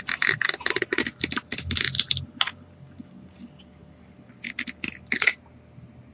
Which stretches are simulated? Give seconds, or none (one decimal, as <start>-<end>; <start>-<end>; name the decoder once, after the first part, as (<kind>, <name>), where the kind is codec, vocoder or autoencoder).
none